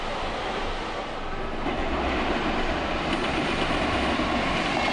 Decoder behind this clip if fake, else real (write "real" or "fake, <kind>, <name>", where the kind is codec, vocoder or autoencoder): real